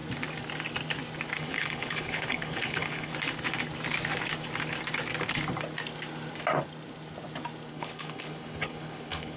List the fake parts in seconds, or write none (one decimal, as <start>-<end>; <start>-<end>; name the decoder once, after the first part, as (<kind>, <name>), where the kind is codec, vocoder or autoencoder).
1.4-3.1 (codec, HILCodec); 7.7-9.4